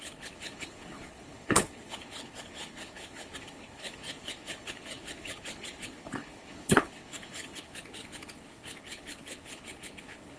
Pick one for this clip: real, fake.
fake